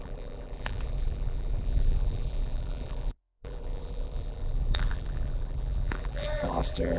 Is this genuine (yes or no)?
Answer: no